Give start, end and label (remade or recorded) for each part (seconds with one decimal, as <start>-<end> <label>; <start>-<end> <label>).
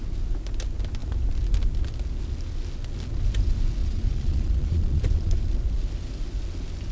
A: 0.0-3.8 recorded; 3.8-5.4 remade; 5.4-6.9 recorded